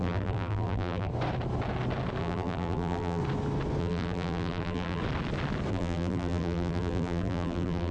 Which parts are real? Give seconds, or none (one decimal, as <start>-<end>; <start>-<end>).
1.1-2.2; 3.2-3.8; 5.0-5.7